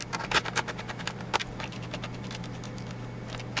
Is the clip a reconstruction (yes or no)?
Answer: no